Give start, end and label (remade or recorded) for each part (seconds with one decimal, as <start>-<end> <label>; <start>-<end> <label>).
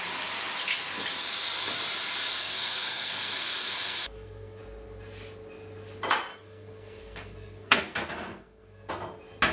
0.0-2.3 recorded; 2.3-4.6 remade; 4.6-6.3 recorded; 6.3-8.9 remade; 8.9-9.5 recorded